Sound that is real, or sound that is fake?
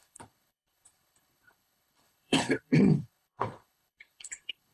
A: fake